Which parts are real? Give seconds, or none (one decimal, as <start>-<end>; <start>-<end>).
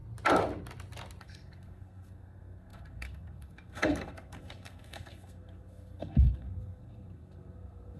0.0-1.2